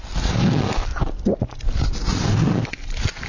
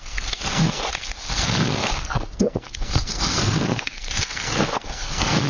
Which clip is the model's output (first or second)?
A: second